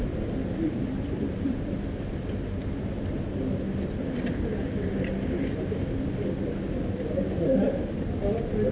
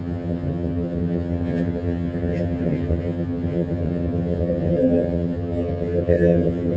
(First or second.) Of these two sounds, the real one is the first